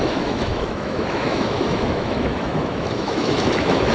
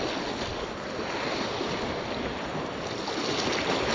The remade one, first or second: first